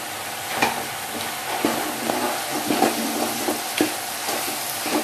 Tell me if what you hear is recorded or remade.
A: recorded